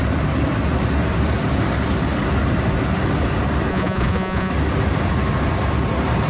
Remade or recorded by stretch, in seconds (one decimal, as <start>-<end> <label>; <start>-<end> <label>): 0.0-3.7 recorded; 3.7-4.5 remade; 4.5-6.3 recorded